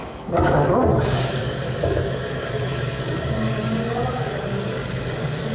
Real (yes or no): no